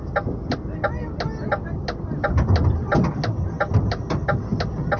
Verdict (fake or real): real